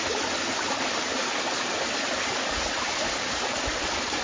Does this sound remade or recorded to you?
recorded